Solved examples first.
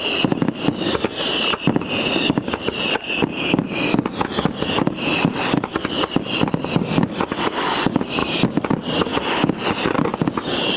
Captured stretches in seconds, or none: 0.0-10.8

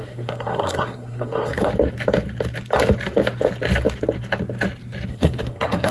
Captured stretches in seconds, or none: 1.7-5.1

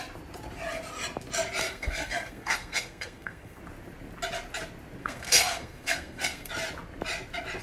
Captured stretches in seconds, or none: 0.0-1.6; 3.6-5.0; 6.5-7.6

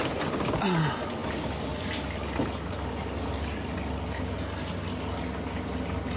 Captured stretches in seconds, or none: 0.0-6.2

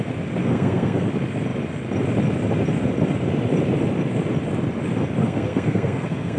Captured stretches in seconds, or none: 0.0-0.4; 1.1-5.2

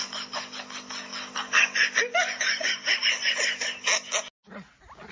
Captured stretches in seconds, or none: 0.0-5.1

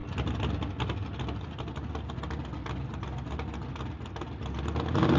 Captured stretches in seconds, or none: 0.0-5.2

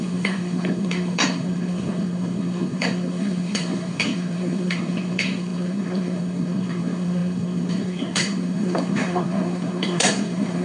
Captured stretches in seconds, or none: none